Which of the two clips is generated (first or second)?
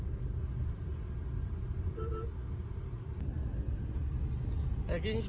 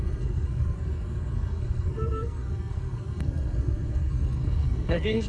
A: second